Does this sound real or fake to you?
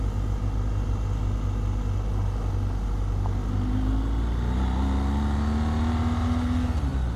real